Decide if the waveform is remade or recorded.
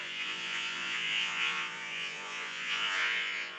remade